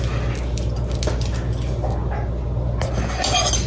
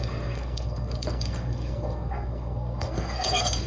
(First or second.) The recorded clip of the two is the first